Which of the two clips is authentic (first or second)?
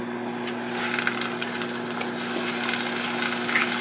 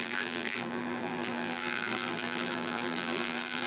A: first